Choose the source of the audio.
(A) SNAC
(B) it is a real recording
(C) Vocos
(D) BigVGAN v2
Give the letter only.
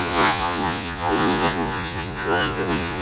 C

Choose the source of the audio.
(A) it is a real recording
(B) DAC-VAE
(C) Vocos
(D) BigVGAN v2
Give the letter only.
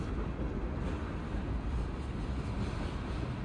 A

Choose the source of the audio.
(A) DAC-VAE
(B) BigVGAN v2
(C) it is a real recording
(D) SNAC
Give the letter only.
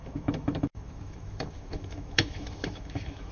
A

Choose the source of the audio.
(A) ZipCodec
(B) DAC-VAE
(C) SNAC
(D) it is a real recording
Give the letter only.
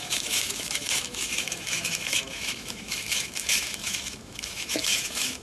B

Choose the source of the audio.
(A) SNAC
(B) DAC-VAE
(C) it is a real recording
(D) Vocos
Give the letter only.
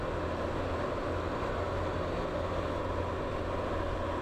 C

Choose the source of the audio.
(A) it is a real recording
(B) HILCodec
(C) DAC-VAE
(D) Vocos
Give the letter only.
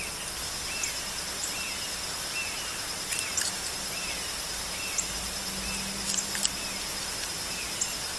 A